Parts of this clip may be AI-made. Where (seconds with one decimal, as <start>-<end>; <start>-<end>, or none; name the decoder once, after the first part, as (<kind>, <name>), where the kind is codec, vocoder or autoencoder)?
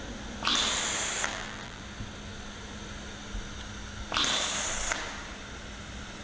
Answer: 1.3-1.8 (vocoder, BigVGAN v2)